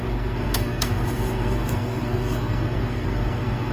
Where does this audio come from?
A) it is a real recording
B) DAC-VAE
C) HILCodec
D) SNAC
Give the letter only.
D